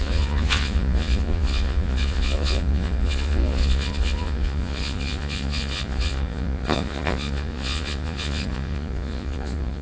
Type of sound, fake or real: fake